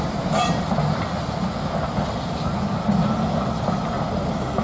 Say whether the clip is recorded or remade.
recorded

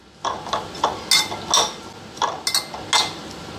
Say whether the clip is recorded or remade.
recorded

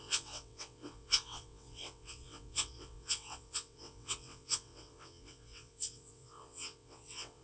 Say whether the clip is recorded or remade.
remade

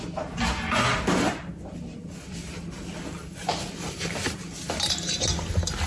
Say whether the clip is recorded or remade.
recorded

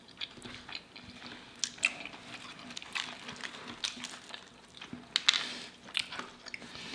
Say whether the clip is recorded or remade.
recorded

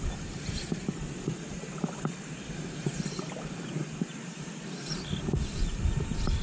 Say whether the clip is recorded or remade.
remade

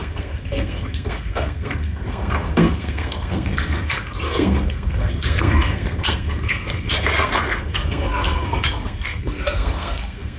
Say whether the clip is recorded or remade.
remade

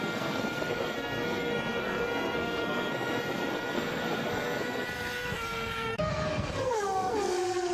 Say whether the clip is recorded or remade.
remade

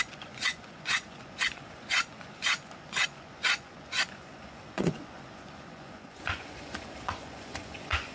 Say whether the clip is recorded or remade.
remade